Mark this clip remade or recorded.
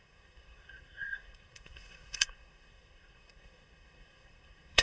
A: remade